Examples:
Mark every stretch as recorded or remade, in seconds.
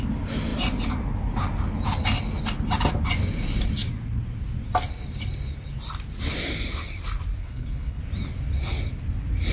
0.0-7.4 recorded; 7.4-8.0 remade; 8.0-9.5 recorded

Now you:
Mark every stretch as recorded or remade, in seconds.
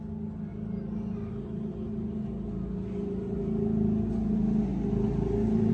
0.0-5.7 recorded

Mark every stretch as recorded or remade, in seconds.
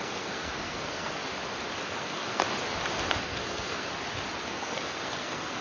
0.0-1.2 remade; 1.2-1.8 recorded; 1.8-2.4 remade; 2.4-3.2 recorded; 3.2-3.9 remade; 3.9-4.4 recorded; 4.4-5.6 remade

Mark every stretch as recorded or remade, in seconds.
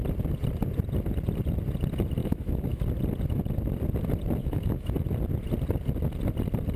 0.0-2.2 recorded; 2.2-2.8 remade; 2.8-4.4 recorded; 4.4-4.9 remade; 4.9-6.8 recorded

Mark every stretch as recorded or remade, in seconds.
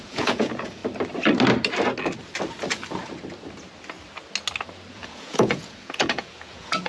0.0-0.8 remade; 0.8-4.9 recorded; 4.9-6.9 remade